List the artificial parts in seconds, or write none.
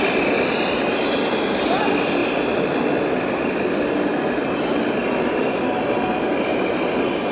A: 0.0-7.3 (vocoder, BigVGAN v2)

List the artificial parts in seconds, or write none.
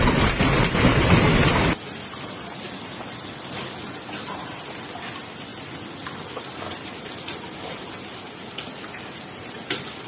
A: 0.9-1.4 (vocoder, BigVGAN v2)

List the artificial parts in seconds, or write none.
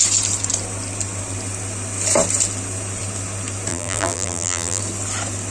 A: 3.7-4.8 (vocoder, BigVGAN v2)